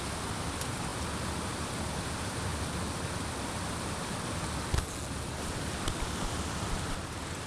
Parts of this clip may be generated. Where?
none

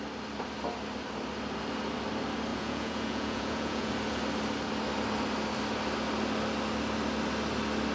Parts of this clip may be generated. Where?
2.5-3.9 (vocoder, Vocos)

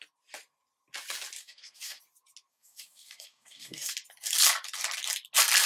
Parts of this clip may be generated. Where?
1.4-2.0 (codec, DAC); 2.5-3.9

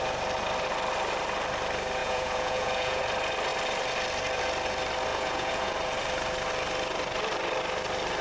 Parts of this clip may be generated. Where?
2.0-3.0 (vocoder, Vocos); 5.1-5.7